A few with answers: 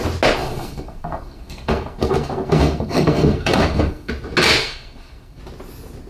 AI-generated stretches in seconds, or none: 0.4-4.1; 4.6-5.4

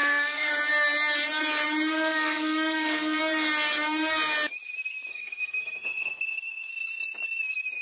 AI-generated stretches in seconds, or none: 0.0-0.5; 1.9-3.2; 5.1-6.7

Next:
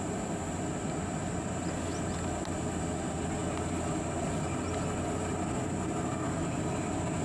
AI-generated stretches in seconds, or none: none

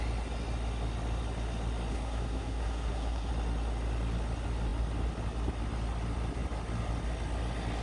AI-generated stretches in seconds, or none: 1.9-3.3